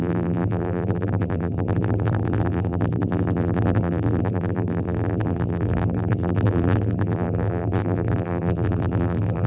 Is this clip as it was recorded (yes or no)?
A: no